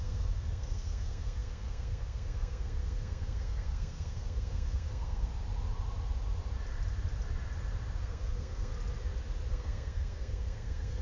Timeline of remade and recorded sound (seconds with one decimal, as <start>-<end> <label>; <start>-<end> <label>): 0.0-5.3 remade; 5.3-8.0 recorded; 8.0-8.7 remade; 8.7-9.5 recorded; 9.5-11.0 remade